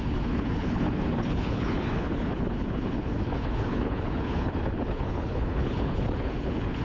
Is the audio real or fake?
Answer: fake